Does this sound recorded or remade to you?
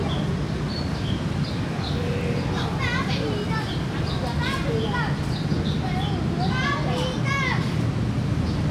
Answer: recorded